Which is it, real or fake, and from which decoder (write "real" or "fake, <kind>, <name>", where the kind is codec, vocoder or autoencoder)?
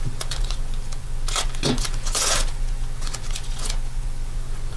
fake, vocoder, Vocos